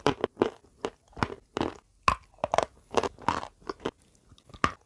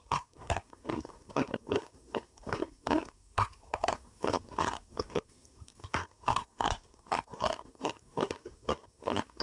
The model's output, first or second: second